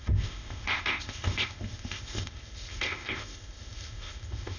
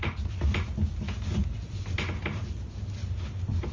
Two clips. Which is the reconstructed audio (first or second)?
first